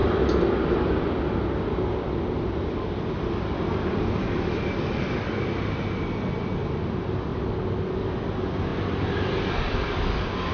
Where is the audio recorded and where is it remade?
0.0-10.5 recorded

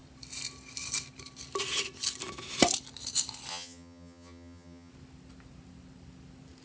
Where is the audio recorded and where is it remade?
0.0-3.5 recorded; 3.5-4.9 remade; 4.9-6.6 recorded

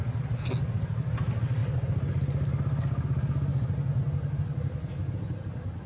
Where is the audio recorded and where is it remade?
0.0-5.9 recorded

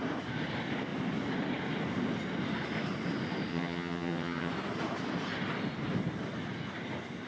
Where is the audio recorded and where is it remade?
0.0-3.5 recorded; 3.5-4.5 remade; 4.5-7.3 recorded

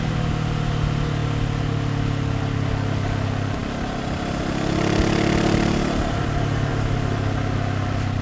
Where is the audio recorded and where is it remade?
0.0-8.2 recorded

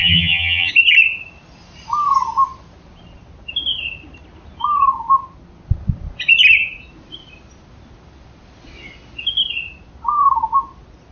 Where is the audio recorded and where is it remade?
0.0-0.7 remade; 0.7-11.1 recorded